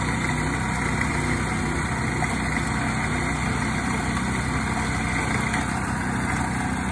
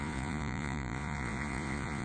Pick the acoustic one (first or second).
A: first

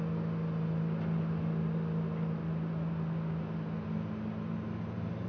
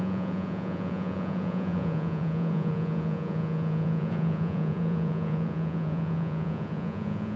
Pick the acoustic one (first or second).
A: first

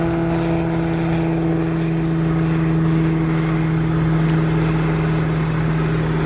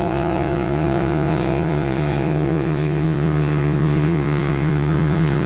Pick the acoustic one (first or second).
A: first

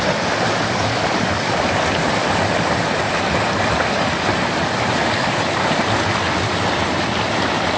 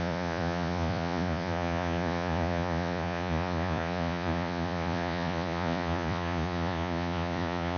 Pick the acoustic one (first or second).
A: first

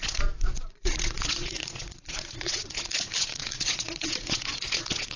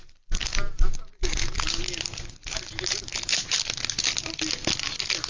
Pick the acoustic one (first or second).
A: second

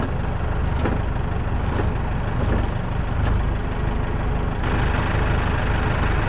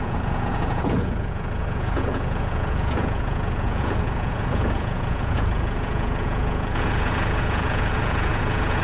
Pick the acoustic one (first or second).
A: first